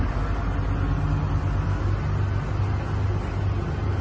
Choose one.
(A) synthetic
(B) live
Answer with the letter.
B